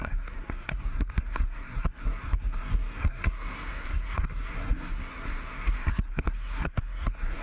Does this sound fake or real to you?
fake